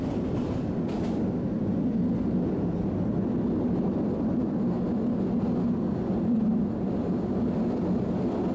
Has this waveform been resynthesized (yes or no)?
no